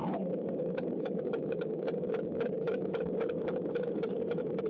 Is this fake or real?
fake